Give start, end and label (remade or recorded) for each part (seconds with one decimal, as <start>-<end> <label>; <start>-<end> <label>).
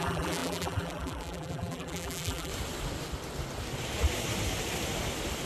0.0-2.5 remade; 2.5-5.5 recorded